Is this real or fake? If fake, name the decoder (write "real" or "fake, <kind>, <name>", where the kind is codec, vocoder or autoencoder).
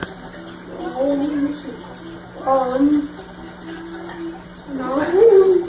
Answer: real